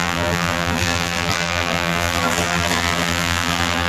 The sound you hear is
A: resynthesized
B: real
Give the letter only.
A